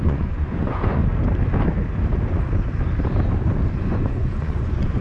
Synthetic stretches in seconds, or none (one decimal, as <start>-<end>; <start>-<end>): 0.0-1.0; 3.8-5.0